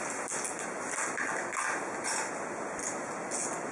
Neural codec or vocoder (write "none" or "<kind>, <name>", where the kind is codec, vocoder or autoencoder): none